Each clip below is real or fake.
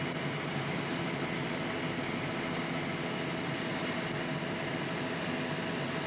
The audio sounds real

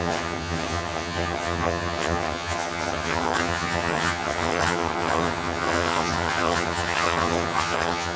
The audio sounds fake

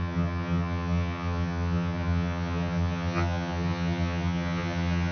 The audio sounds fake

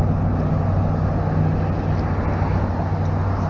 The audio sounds real